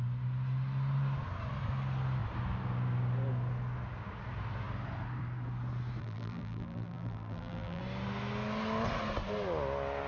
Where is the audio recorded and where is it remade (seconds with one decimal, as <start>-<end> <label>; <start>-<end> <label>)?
0.0-6.0 recorded; 6.0-7.8 remade; 7.8-10.1 recorded